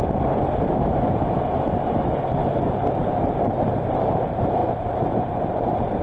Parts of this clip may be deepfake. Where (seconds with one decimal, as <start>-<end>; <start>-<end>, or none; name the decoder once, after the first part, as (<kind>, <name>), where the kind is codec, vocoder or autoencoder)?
3.6-6.0 (vocoder, BigVGAN v2)